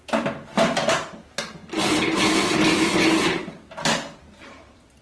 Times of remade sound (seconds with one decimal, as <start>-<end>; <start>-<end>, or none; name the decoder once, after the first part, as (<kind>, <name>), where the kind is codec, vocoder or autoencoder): none